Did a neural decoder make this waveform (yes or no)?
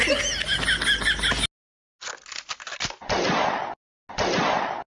no